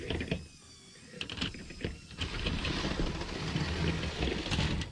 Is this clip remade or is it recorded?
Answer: recorded